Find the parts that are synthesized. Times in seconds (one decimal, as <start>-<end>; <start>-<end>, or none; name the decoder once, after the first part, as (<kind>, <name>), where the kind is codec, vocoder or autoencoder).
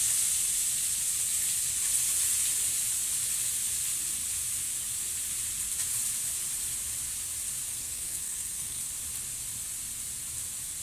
7.7-8.9 (codec, SNAC)